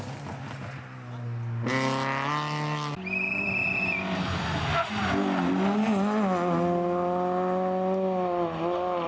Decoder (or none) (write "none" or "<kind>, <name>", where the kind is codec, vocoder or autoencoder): none